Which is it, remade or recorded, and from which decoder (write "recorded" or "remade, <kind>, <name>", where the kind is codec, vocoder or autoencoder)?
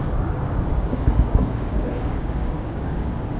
remade, codec, DAC